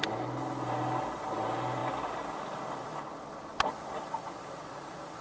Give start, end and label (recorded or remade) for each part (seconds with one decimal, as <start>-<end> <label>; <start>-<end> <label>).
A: 0.0-5.2 recorded